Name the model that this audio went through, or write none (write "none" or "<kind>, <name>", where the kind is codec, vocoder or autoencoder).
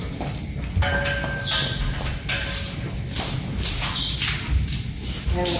none